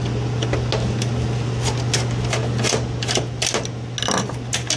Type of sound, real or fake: real